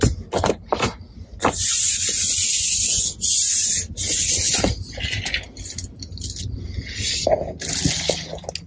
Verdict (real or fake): real